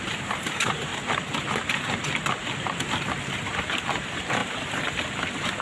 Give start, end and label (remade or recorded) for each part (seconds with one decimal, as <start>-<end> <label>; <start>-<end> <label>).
0.0-0.9 remade; 0.9-2.4 recorded; 2.4-4.4 remade; 4.4-5.6 recorded